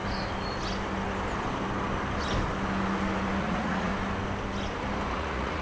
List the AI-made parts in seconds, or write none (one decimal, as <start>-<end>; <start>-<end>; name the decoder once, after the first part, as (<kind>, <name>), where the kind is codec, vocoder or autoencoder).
3.4-3.9 (vocoder, Vocos); 5.1-5.6

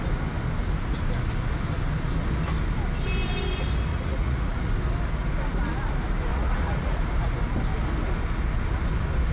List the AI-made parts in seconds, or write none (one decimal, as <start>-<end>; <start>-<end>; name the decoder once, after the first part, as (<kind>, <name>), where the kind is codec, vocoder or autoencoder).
3.9-4.7 (vocoder, Vocos); 6.3-7.0

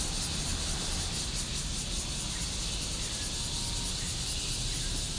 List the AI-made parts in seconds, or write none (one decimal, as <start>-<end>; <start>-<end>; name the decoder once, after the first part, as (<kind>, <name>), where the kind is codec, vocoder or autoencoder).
none

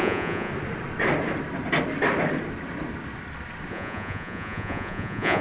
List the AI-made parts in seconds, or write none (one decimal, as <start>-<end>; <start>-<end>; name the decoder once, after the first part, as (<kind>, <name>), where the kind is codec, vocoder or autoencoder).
0.0-0.5 (vocoder, Vocos); 3.7-5.4

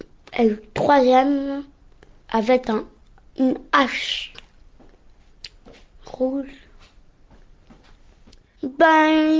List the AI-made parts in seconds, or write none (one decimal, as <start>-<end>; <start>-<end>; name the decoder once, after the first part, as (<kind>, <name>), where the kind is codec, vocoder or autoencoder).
none

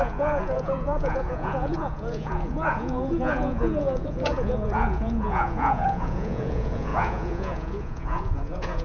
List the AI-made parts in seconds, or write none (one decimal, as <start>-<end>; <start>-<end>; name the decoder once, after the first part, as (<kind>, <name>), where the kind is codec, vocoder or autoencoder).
0.0-8.8 (vocoder, Vocos)